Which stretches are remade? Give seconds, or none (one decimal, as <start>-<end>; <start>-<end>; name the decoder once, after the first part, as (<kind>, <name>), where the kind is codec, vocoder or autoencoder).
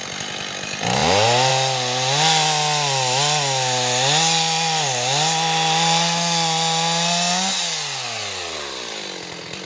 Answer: none